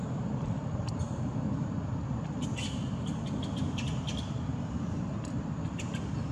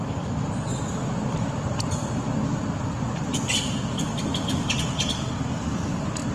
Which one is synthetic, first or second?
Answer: first